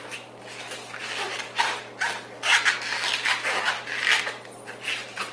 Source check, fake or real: real